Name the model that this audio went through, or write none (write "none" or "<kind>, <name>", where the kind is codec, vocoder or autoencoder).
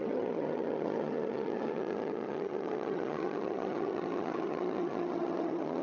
vocoder, HiFi-GAN